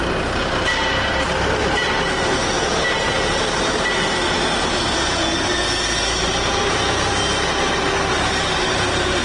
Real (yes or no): yes